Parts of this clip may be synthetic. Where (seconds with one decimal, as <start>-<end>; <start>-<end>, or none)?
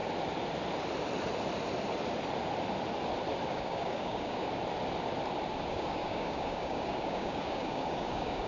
3.5-4.6; 5.7-8.5